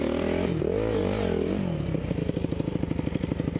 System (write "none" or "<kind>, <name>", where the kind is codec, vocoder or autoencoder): none